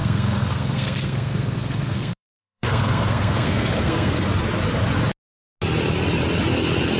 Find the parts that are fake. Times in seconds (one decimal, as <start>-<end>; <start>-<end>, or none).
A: 0.0-4.2